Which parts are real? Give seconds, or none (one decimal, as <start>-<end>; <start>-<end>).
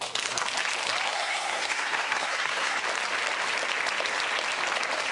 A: 0.0-1.1; 2.8-5.1